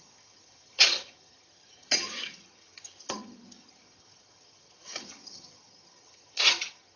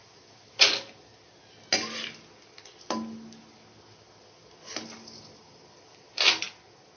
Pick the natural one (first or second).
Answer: second